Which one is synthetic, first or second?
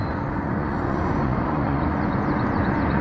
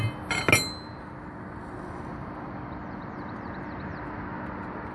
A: first